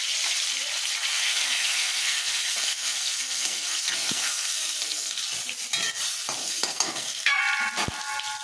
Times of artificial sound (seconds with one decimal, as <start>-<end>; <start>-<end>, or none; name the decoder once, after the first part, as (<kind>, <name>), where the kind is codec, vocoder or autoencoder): 1.1-5.2 (codec, SNAC); 6.4-7.4